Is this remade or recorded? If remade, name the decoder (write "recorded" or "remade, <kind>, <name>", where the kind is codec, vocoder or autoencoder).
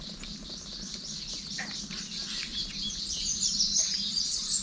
recorded